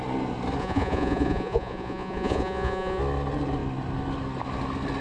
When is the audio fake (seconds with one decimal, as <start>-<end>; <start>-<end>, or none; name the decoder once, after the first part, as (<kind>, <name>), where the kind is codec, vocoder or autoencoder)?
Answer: 0.6-3.0 (vocoder, Vocos)

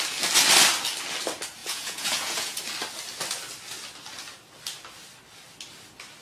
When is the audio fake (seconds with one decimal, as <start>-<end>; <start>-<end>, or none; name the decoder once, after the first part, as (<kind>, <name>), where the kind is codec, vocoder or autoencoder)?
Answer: 1.6-2.6 (vocoder, Vocos)

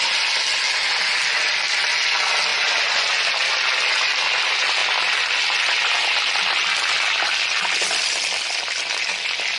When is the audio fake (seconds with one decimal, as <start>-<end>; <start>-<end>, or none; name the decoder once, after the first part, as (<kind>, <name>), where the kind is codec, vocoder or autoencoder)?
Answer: 2.5-3.1 (vocoder, Vocos)

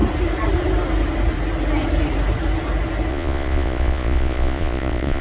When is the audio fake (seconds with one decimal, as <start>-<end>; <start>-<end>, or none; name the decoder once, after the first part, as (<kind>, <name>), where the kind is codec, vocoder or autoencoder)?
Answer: 3.1-5.2 (vocoder, Vocos)

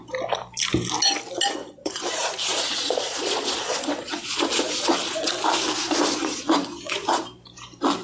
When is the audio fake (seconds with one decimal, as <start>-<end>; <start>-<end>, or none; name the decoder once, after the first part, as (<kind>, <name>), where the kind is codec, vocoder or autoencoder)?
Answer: 1.6-5.3 (vocoder, Vocos); 6.2-7.2

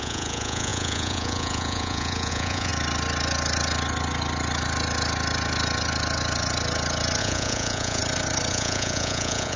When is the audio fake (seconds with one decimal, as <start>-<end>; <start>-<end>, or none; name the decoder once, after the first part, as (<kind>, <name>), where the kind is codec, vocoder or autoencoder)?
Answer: 0.0-2.7 (vocoder, Vocos); 7.2-8.0; 8.5-9.6

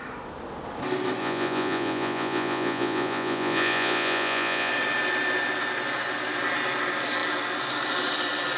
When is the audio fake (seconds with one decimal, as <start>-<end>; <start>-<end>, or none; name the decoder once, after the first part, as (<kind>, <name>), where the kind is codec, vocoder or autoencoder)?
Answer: 1.2-4.7 (vocoder, Vocos)